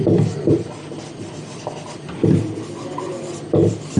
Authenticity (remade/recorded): recorded